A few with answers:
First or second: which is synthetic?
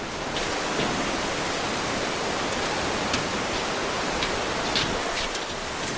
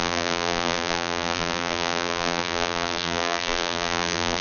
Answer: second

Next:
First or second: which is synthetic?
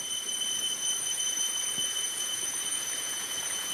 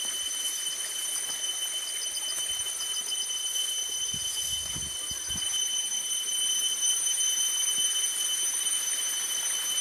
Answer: first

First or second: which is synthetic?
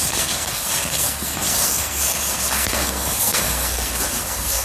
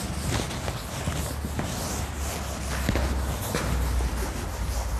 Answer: first